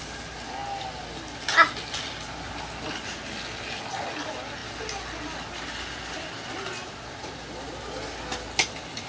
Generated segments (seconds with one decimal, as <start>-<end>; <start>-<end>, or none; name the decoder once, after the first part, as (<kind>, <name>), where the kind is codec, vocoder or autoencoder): none